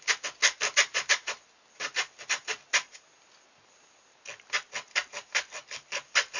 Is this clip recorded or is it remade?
recorded